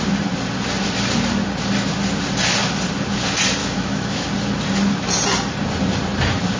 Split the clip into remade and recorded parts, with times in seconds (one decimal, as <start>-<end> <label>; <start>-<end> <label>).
0.0-3.6 recorded; 3.6-4.3 remade; 4.3-6.6 recorded